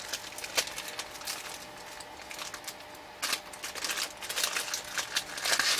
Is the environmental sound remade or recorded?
recorded